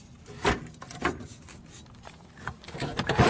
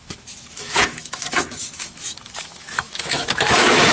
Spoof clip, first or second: second